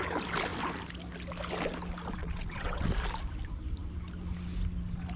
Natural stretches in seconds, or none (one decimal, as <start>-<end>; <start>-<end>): 0.0-2.2; 2.9-5.2